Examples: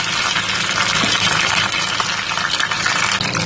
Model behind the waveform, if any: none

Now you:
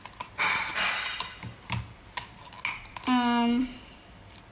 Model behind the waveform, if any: none